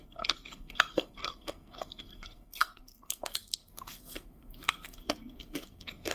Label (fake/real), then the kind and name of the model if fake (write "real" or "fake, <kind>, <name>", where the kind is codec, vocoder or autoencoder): fake, codec, SNAC